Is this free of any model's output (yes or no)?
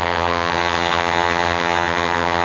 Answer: no